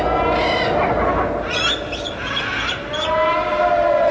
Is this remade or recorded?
recorded